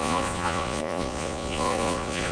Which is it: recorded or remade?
remade